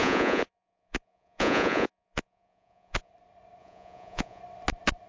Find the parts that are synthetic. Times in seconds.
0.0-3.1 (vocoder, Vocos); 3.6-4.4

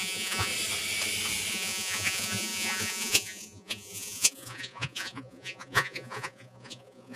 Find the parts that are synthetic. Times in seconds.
0.0-0.5 (vocoder, Vocos); 1.5-7.2

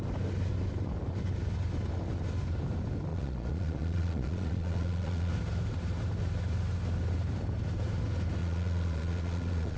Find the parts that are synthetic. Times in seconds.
3.1-5.3 (vocoder, Vocos); 8.4-9.8